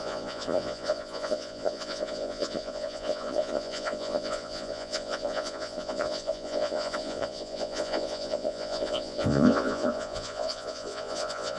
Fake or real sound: fake